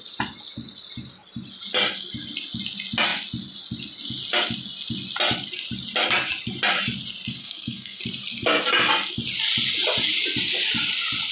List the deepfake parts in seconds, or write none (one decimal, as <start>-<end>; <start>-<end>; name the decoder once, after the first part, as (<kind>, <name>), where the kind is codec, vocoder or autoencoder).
7.4-8.0 (codec, SNAC)